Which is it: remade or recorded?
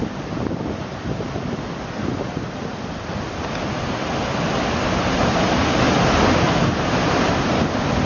recorded